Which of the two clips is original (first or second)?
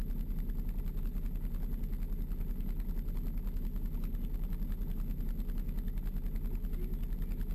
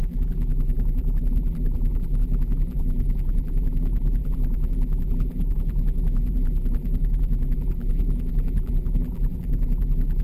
first